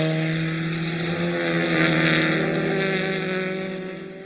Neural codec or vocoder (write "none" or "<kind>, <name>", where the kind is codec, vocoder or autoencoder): none